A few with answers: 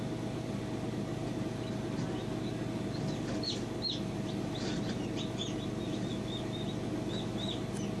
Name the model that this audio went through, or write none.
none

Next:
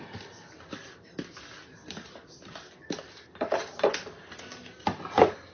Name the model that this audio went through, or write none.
none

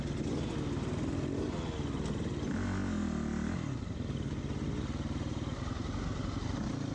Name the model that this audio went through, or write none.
none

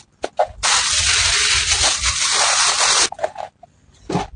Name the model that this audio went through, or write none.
none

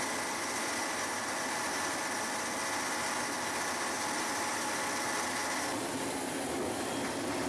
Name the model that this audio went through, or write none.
none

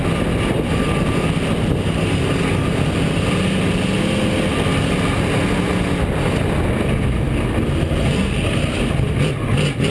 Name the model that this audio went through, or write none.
none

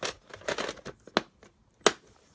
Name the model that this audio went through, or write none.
none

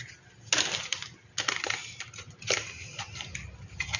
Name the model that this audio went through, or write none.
none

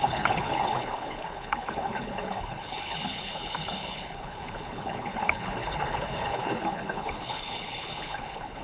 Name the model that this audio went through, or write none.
codec, HILCodec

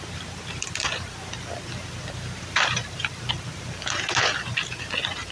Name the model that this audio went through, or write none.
none